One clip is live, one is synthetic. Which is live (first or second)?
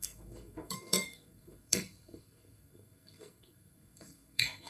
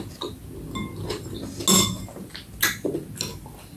second